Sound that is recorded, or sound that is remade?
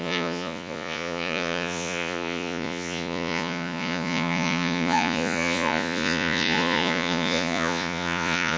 remade